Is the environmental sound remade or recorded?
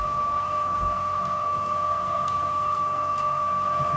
remade